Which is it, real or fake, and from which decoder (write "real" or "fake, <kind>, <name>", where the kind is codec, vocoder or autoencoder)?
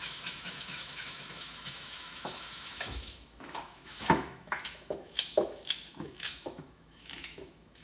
fake, autoencoder, DAC-VAE